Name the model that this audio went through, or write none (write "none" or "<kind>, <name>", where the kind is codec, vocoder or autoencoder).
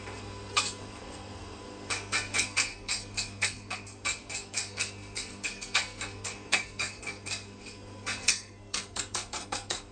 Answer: codec, SNAC